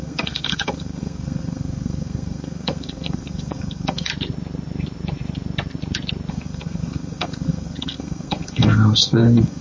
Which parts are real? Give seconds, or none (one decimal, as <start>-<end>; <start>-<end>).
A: 4.1-6.3